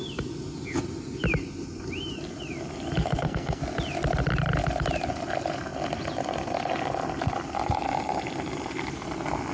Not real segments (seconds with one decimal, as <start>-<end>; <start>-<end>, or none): 3.0-3.6